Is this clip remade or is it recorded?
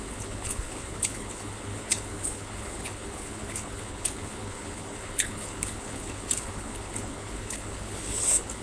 remade